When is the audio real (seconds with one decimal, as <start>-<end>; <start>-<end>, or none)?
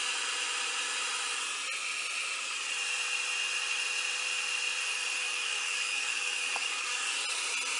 0.0-5.2; 7.0-7.8